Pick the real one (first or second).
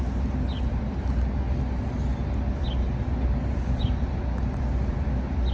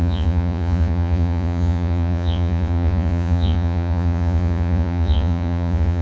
first